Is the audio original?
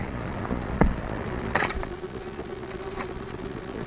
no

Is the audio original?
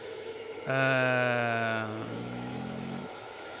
no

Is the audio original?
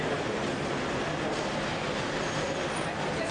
yes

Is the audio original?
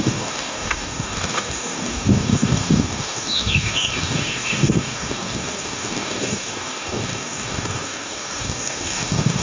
no